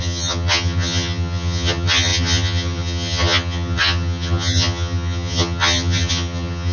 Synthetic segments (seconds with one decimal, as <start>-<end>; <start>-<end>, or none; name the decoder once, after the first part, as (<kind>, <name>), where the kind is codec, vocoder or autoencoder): 0.0-6.7 (vocoder, HiFi-GAN)